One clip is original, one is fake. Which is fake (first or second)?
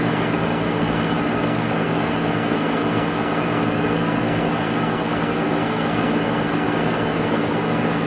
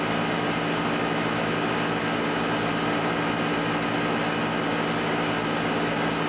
first